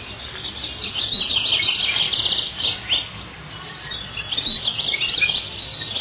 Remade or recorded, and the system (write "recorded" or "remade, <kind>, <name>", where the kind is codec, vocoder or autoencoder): recorded